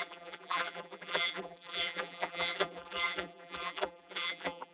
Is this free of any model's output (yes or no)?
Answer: no